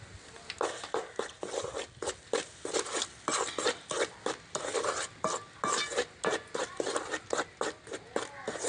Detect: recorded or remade recorded